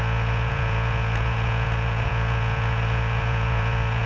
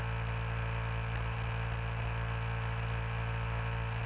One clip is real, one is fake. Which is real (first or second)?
second